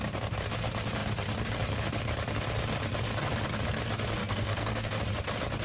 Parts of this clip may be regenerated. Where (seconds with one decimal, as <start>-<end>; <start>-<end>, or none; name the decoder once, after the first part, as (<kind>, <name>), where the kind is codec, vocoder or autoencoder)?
4.2-5.0 (codec, SNAC)